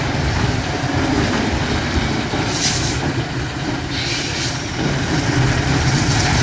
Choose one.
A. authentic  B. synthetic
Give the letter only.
B